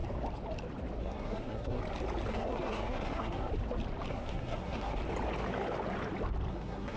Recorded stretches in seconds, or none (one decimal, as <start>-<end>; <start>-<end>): 0.0-1.0; 1.8-2.3; 3.5-4.1; 5.0-6.5